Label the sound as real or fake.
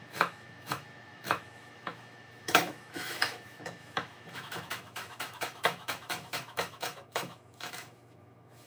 fake